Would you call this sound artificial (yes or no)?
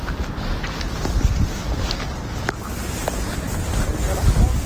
no